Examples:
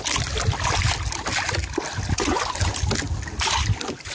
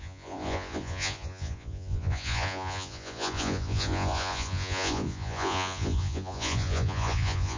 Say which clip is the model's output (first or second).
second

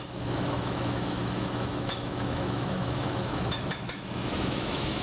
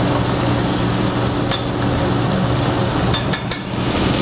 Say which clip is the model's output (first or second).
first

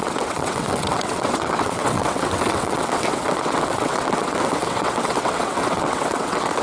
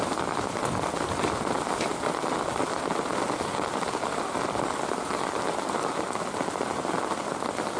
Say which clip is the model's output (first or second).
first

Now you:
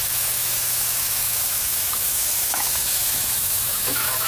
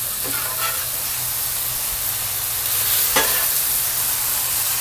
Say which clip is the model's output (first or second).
first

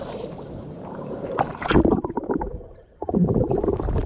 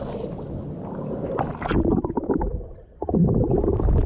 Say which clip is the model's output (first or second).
first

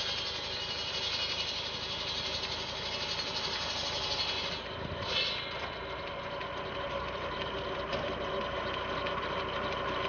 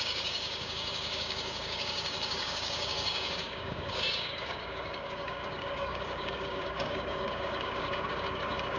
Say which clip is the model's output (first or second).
second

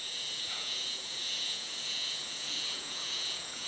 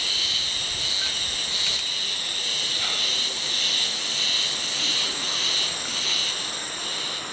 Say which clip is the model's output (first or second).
first